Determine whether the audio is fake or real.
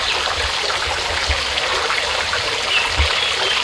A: real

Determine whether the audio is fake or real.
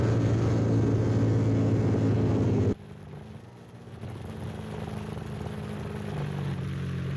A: real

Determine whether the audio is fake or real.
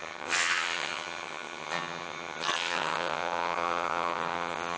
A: fake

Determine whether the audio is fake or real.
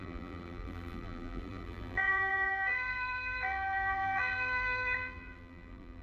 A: fake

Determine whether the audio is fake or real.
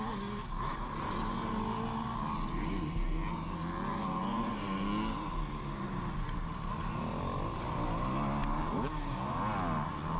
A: real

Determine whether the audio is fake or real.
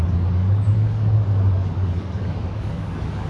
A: fake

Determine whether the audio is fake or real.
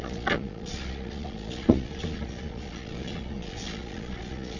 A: fake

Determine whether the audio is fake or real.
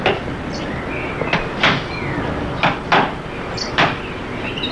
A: real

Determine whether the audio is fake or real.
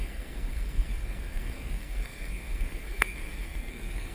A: fake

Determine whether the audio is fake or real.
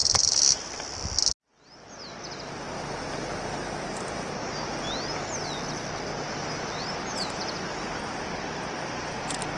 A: real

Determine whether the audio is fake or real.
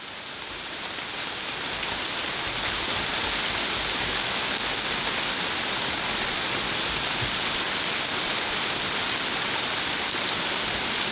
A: real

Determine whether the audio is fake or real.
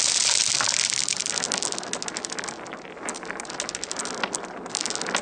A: real